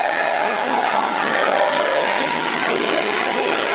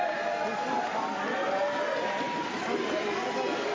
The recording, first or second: second